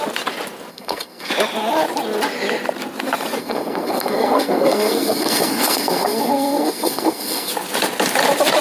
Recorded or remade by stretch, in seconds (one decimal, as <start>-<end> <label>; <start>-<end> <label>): 0.0-0.7 recorded; 0.7-1.3 remade; 1.3-3.4 recorded; 3.4-7.5 remade; 7.5-8.6 recorded